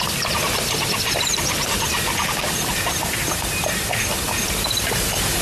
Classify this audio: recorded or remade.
recorded